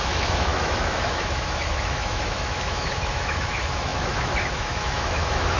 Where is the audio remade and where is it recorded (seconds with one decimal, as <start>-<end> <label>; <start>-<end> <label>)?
0.0-5.6 remade

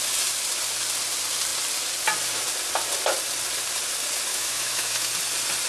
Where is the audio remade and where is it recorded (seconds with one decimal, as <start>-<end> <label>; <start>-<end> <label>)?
0.0-4.3 recorded; 4.3-5.1 remade; 5.1-5.7 recorded